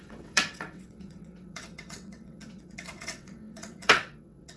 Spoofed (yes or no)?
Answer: yes